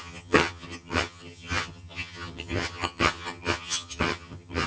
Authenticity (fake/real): fake